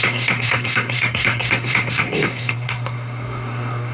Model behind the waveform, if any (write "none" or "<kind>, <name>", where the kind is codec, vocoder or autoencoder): codec, SNAC